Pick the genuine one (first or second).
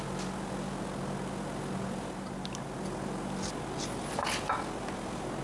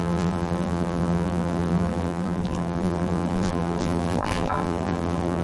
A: first